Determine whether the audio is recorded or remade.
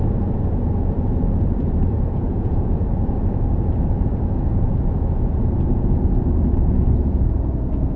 remade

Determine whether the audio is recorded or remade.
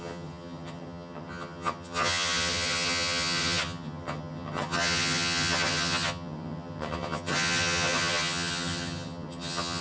remade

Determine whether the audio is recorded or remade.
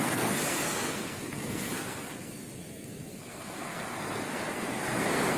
remade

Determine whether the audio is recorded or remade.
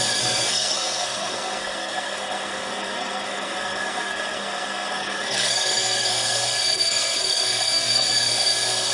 remade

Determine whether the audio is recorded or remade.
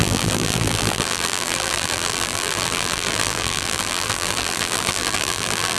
remade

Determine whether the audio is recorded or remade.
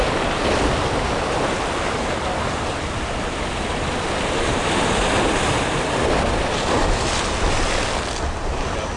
recorded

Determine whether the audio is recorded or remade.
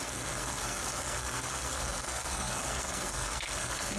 remade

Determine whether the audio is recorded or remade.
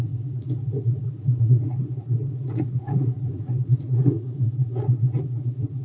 remade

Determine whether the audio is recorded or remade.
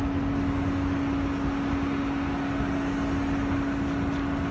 recorded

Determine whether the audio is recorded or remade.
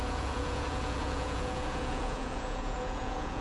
remade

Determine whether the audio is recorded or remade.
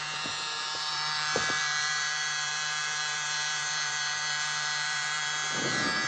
remade